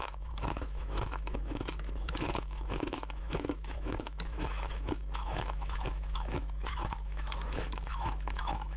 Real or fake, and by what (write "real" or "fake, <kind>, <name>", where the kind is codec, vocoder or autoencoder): fake, autoencoder, DAC-VAE